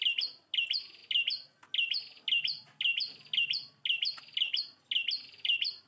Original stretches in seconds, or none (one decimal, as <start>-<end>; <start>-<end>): 0.0-5.9